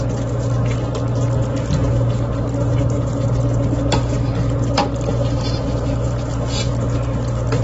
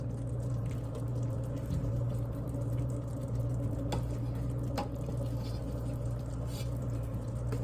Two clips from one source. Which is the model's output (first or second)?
second